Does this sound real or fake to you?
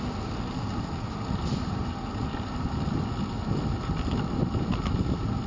real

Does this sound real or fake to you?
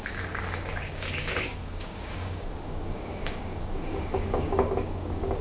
fake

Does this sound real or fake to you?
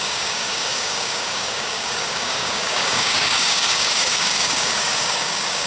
fake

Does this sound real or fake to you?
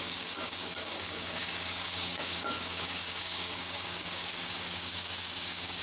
fake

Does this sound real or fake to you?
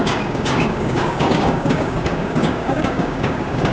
fake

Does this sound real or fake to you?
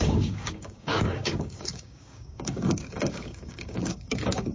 fake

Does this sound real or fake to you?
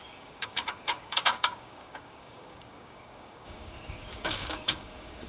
fake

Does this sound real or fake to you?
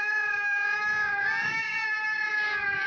fake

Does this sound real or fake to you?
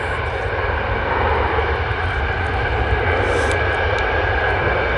real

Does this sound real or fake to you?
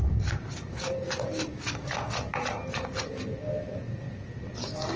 real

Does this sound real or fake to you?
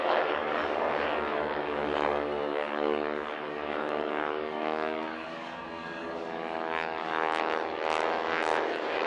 fake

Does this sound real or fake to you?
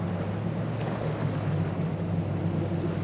real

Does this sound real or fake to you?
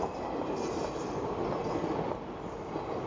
real